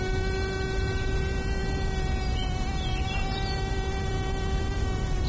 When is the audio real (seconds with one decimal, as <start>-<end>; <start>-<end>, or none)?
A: 0.0-5.3

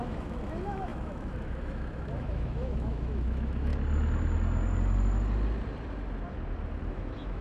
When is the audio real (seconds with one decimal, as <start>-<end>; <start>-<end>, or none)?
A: 3.7-6.9

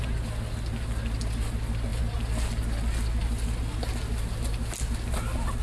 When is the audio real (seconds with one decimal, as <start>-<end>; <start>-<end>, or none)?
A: 0.0-5.6

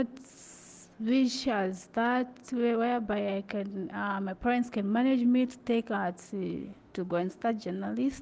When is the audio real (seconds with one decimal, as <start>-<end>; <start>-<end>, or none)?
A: 0.0-6.6; 7.5-8.2

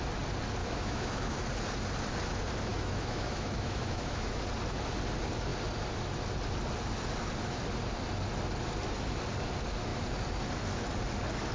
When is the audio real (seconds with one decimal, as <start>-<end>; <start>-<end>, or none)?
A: 0.0-0.6; 1.4-2.7; 4.4-11.5

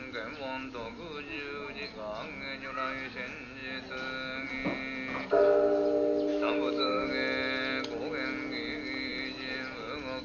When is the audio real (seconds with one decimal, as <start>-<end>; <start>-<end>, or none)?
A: 0.0-6.3; 7.1-10.2